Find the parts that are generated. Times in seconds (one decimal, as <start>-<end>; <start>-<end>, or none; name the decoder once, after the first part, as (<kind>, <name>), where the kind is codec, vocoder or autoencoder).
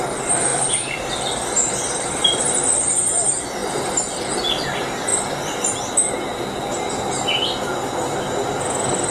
0.5-2.4 (vocoder, BigVGAN v2)